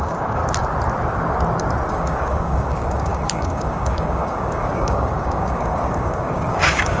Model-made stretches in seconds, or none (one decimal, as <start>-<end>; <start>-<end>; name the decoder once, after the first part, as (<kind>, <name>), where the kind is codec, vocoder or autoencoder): 0.0-0.4 (codec, DAC); 1.9-7.0